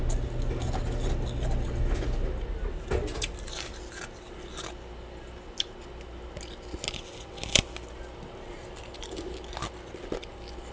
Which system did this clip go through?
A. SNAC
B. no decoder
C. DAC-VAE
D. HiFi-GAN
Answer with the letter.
B